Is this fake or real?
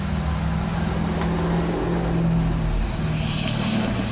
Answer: real